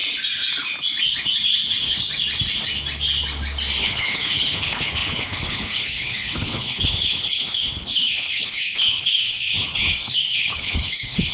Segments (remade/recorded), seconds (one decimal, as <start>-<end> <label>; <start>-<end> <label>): 0.0-3.8 recorded; 3.8-11.3 remade